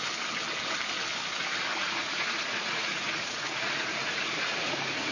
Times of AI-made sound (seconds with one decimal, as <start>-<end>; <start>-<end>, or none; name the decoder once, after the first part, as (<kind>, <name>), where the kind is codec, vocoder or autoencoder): 1.7-5.1 (vocoder, Vocos)